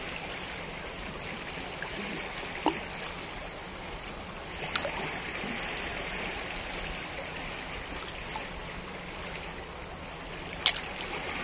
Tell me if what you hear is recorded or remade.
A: recorded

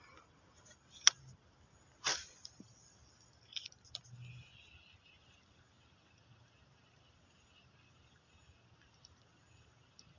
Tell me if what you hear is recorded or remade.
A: recorded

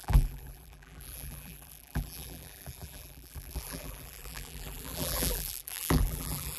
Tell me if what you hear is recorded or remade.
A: remade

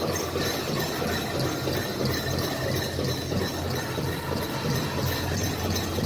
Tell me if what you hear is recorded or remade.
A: recorded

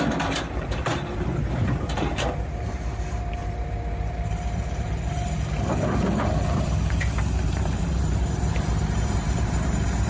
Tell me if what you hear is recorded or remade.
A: remade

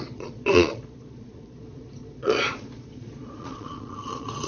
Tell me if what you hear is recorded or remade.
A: remade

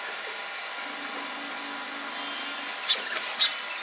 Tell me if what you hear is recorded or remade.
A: recorded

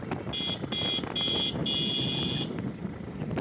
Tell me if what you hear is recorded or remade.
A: recorded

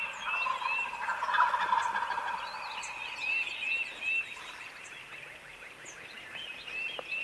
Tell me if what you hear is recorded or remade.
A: recorded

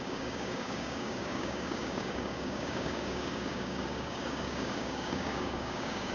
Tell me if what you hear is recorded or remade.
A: remade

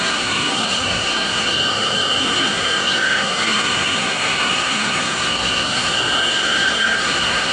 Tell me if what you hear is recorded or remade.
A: remade